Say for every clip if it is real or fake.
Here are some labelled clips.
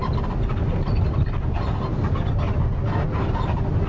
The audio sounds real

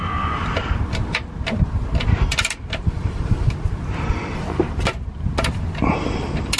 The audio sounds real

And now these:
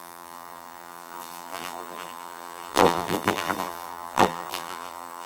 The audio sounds fake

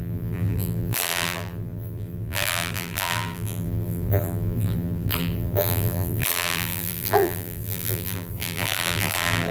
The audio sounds fake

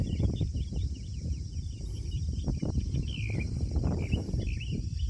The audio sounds fake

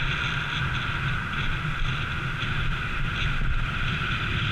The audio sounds real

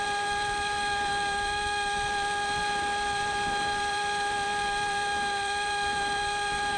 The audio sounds fake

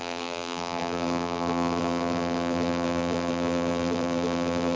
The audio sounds fake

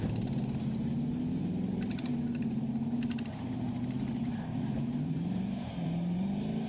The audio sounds fake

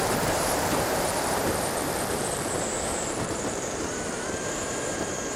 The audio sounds fake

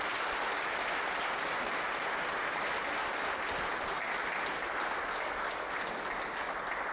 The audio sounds real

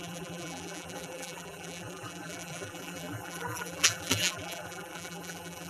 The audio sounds fake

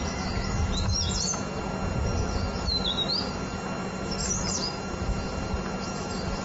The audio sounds real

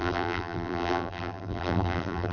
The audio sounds fake